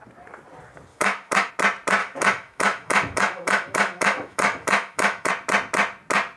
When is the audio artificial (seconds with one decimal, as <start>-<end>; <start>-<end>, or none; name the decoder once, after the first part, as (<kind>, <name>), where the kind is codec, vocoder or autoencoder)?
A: 0.9-1.5 (autoencoder, DAC-VAE); 2.0-5.3